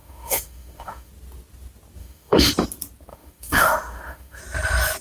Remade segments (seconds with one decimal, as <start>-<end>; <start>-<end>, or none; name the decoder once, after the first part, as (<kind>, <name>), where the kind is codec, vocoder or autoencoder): 0.0-1.1 (autoencoder, DAC-VAE); 2.0-2.5; 3.1-4.4